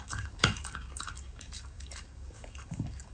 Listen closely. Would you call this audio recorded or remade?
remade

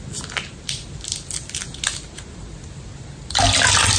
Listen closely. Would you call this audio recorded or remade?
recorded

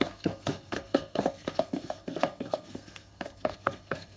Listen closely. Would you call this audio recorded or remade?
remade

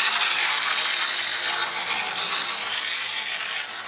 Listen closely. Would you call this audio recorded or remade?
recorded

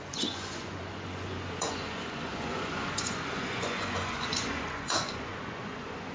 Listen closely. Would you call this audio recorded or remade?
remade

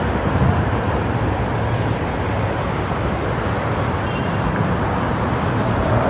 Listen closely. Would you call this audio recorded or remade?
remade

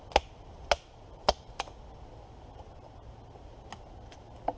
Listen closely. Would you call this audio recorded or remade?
recorded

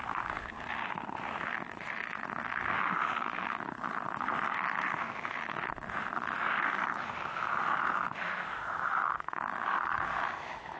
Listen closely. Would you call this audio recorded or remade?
remade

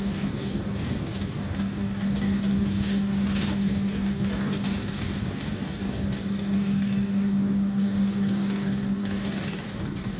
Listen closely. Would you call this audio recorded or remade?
remade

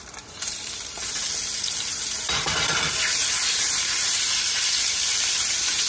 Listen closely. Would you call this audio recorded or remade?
remade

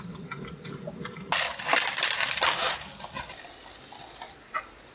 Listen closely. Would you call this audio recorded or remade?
recorded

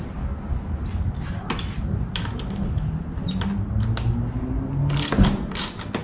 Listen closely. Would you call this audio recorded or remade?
recorded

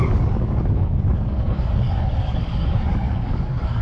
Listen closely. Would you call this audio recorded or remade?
remade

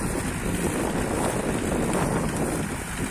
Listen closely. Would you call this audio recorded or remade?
recorded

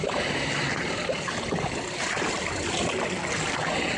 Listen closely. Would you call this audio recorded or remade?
recorded